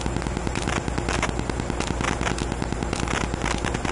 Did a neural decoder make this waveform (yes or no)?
no